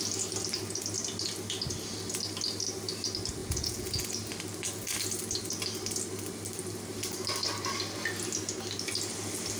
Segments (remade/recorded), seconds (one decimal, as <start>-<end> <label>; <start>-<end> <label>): 0.0-3.4 recorded; 3.4-4.1 remade; 4.1-9.6 recorded

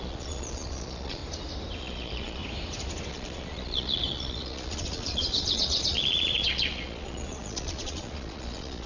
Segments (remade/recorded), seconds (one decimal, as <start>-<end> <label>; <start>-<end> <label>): 0.0-1.2 remade; 1.2-1.8 recorded; 1.8-2.4 remade; 2.4-3.1 recorded; 3.1-8.9 remade

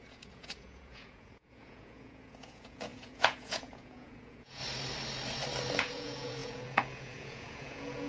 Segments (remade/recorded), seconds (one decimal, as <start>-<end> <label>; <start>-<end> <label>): 0.0-4.6 remade; 4.6-5.8 recorded; 5.8-8.1 remade

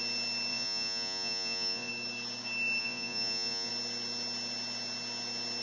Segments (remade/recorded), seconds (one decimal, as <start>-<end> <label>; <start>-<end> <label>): 0.0-0.5 recorded; 0.5-1.9 remade; 1.9-2.8 recorded; 2.8-3.7 remade; 3.7-5.6 recorded

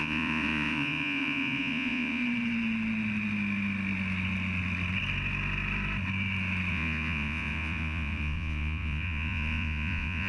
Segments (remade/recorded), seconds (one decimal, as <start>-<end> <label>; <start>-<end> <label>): 0.0-2.2 remade; 2.2-6.7 recorded; 6.7-10.3 remade

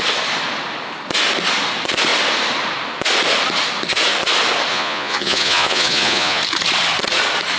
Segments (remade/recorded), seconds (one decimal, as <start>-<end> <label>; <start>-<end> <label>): 0.0-4.7 recorded; 4.7-6.4 remade; 6.4-7.6 recorded

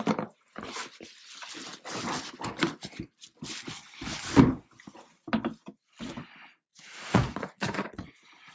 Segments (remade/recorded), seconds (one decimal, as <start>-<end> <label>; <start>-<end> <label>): 0.0-6.7 recorded; 6.7-8.5 remade

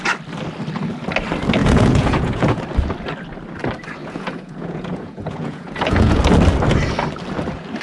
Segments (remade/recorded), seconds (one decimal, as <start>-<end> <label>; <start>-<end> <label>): 0.0-1.6 recorded; 1.6-2.6 remade; 2.6-4.0 recorded; 4.0-6.2 remade; 6.2-7.8 recorded